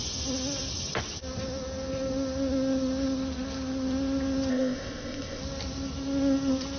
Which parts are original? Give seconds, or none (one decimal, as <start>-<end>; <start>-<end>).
0.0-4.5; 5.4-6.8